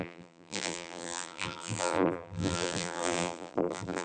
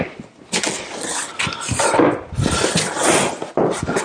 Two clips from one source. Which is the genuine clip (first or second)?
second